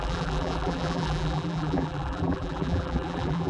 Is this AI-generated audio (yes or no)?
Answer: yes